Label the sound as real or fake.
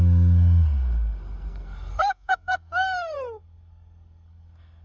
fake